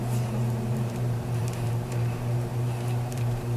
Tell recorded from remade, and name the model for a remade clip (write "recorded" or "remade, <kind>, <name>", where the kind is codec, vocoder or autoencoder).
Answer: remade, vocoder, BigVGAN v2